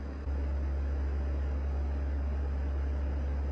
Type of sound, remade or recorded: recorded